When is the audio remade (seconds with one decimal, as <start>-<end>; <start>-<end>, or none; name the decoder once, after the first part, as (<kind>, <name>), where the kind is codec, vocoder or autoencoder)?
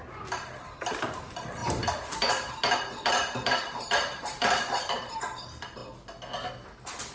1.6-2.3 (vocoder, BigVGAN v2); 3.2-5.1